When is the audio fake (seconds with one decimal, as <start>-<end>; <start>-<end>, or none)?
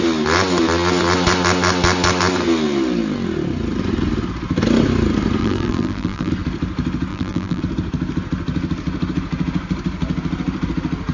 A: 5.4-6.3; 7.1-7.6